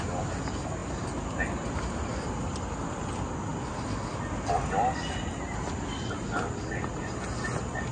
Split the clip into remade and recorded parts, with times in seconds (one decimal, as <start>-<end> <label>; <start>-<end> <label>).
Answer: 0.0-7.9 recorded